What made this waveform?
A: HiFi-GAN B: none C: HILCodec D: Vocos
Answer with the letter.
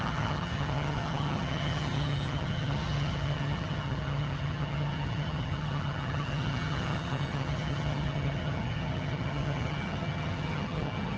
A